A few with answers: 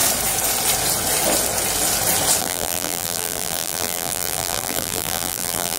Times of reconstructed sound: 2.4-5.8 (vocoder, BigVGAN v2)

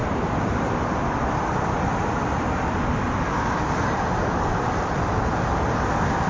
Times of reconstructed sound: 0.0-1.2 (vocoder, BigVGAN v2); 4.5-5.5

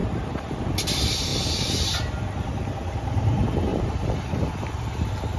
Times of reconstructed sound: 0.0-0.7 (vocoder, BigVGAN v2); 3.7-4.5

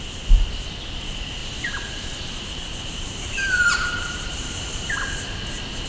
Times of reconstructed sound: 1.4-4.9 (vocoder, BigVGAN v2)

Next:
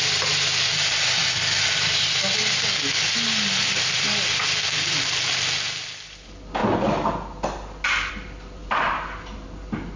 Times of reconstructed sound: none

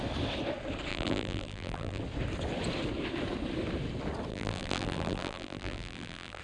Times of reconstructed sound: 0.9-2.0 (vocoder, BigVGAN v2); 4.3-6.4

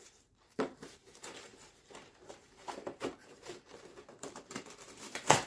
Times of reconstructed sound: 0.0-5.5 (vocoder, BigVGAN v2)

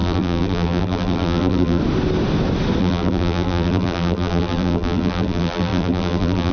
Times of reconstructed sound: 0.0-1.8 (vocoder, BigVGAN v2); 2.8-6.5